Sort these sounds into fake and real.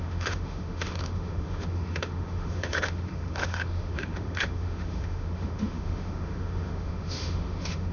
fake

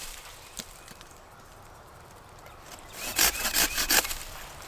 fake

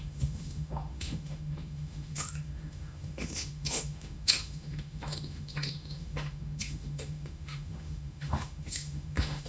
fake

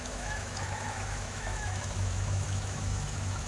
fake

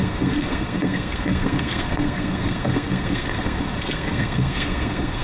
fake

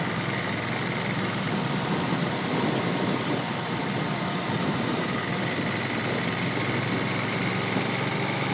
real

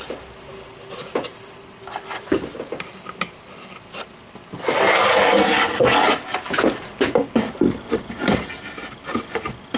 real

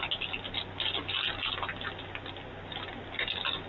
real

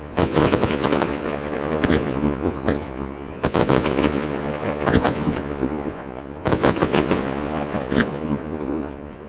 fake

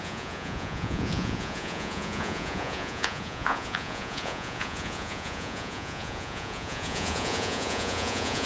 fake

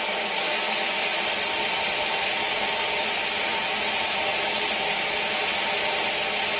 real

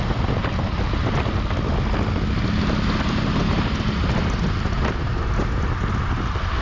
real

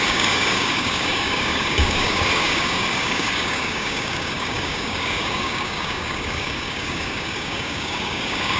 fake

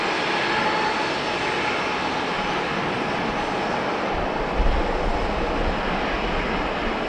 real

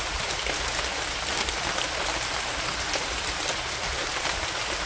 real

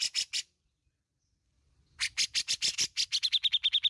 real